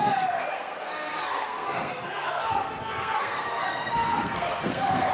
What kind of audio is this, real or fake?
fake